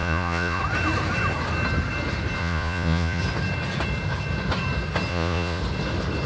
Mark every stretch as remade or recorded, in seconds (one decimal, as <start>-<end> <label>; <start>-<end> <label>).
0.0-0.6 remade; 0.6-2.4 recorded; 2.4-3.2 remade; 3.2-5.1 recorded; 5.1-5.6 remade; 5.6-6.3 recorded